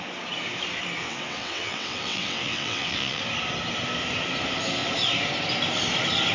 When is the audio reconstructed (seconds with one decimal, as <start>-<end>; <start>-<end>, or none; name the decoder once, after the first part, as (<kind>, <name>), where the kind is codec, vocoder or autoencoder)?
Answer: 1.0-3.2 (vocoder, WaveNeXt)